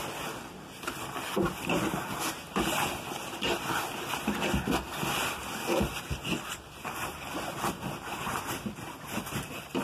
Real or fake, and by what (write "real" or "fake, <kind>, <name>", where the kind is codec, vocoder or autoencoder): real